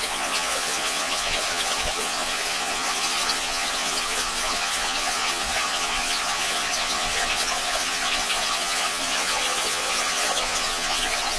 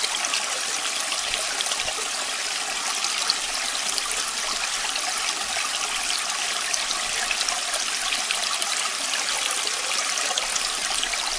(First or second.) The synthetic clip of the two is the first